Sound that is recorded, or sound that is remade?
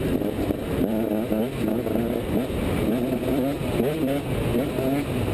recorded